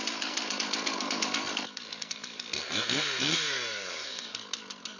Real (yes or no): no